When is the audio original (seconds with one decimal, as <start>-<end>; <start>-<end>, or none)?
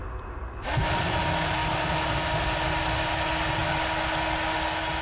0.0-5.0